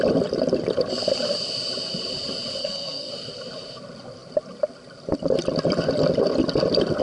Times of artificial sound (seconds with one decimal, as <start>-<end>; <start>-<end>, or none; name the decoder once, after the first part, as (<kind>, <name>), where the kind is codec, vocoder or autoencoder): 2.6-3.1 (codec, SNAC)

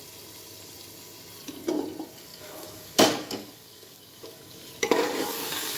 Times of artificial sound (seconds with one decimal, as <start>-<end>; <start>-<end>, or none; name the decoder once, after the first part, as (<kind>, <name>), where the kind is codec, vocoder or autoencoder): 2.3-5.8 (codec, DAC)

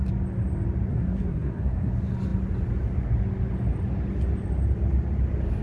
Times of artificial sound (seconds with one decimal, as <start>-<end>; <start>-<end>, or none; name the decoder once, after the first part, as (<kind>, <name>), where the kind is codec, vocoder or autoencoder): 0.9-1.9 (codec, SNAC)

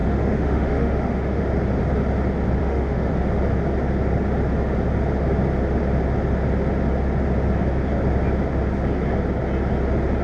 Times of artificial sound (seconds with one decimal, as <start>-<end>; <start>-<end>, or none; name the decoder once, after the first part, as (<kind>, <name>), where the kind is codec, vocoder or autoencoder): 0.0-1.4 (autoencoder, DAC-VAE); 2.6-3.1

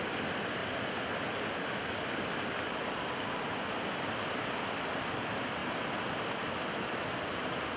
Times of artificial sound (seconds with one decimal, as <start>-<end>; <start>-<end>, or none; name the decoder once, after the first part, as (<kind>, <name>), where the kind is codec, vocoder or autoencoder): none

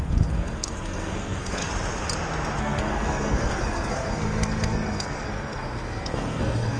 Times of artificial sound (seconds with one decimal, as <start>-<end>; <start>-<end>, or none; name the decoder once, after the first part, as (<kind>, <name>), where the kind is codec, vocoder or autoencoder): 0.0-1.6 (codec, SNAC); 2.6-6.8